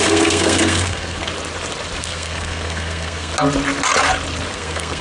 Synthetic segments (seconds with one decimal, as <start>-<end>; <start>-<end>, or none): 0.0-1.3; 2.0-3.3; 4.5-5.0